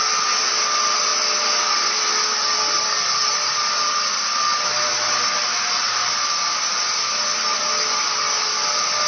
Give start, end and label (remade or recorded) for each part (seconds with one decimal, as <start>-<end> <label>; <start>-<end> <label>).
0.0-9.1 remade